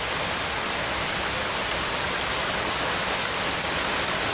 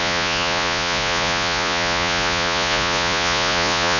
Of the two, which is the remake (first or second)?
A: second